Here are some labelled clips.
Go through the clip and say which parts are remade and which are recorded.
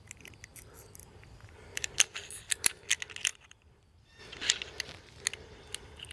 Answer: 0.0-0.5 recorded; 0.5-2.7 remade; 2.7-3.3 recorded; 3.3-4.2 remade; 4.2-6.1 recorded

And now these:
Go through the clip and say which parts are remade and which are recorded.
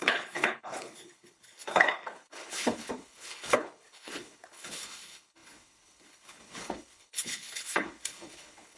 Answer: 0.0-8.8 remade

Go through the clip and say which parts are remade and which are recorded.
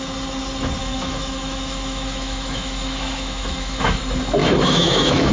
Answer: 0.0-0.8 recorded; 0.8-4.0 remade; 4.0-4.4 recorded; 4.4-5.3 remade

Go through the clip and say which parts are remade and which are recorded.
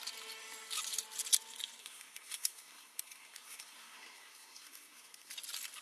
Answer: 0.0-1.8 recorded; 1.8-5.3 remade; 5.3-5.8 recorded